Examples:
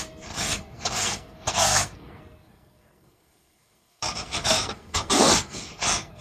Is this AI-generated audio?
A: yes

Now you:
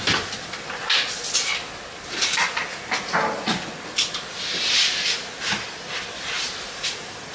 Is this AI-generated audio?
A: no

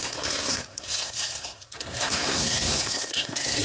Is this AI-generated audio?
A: yes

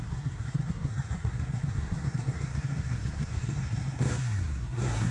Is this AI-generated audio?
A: yes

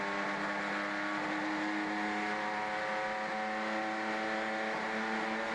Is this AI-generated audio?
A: no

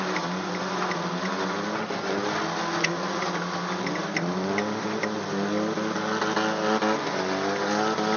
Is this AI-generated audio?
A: no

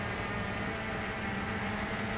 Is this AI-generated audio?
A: no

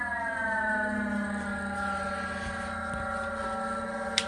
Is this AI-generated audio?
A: no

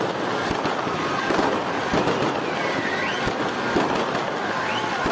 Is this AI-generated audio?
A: no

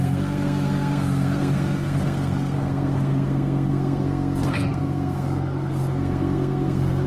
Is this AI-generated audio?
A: yes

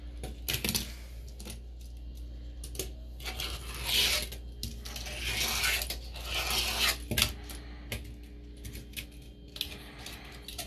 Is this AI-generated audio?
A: no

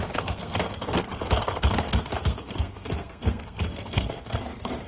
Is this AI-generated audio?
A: yes